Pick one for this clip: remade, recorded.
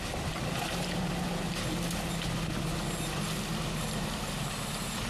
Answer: recorded